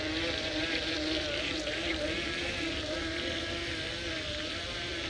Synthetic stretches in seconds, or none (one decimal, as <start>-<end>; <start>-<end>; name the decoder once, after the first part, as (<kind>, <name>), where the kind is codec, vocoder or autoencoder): none